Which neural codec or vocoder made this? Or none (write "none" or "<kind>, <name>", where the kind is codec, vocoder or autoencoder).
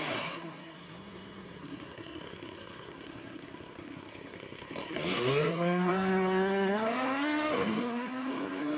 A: codec, SNAC